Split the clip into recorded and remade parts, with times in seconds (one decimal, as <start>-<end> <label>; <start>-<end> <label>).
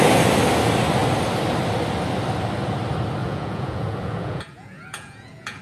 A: 0.0-3.2 recorded; 3.2-5.6 remade